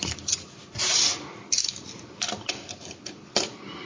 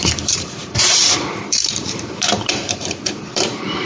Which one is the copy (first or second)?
second